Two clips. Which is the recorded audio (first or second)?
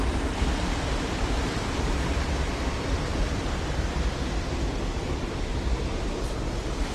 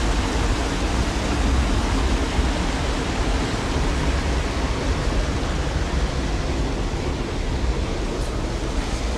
second